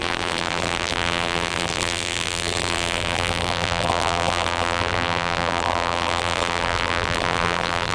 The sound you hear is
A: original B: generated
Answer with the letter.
B